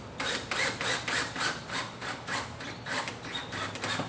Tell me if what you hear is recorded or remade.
recorded